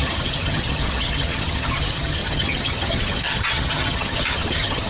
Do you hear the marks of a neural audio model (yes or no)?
yes